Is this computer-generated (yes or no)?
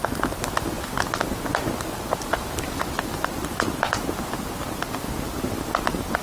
no